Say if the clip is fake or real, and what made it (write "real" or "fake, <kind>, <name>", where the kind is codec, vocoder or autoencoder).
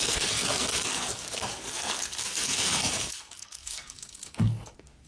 fake, codec, SNAC